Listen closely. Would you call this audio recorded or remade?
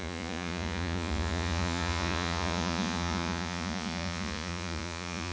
remade